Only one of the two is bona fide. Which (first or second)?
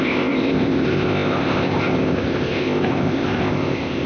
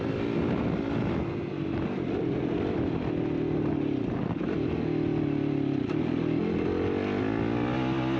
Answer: second